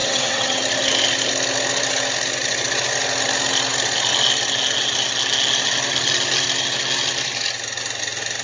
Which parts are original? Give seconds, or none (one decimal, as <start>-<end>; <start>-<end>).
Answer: 0.6-8.4